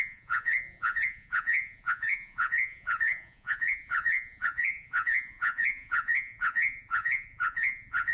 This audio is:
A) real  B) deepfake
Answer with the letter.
B